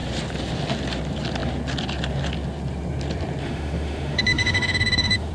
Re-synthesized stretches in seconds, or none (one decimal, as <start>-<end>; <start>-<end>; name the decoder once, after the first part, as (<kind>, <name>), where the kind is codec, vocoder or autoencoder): 3.4-5.3 (autoencoder, DAC-VAE)